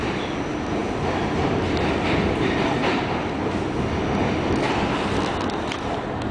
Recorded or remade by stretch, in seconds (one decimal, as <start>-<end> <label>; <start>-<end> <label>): 0.0-6.3 recorded